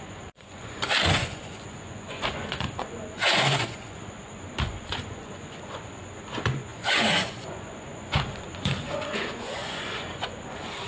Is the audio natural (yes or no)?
no